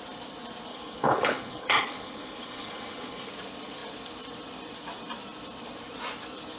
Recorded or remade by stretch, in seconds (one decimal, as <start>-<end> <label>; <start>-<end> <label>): 0.0-0.7 recorded; 0.7-3.3 remade; 3.3-6.6 recorded